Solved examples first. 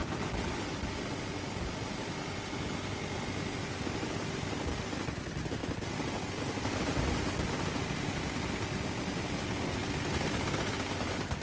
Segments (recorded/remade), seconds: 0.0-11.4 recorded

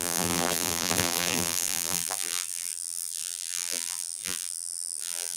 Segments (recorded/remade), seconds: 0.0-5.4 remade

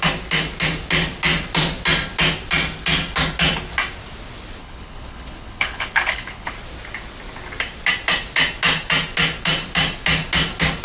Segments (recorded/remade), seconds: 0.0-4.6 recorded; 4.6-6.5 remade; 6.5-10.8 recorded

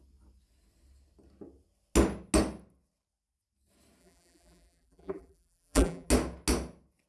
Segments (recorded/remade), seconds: 0.0-4.0 recorded; 4.0-6.1 remade; 6.1-7.1 recorded